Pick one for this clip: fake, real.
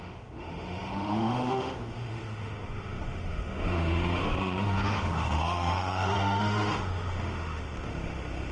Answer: fake